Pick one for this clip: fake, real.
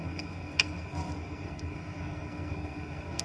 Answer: fake